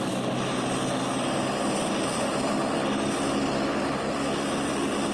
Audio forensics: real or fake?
real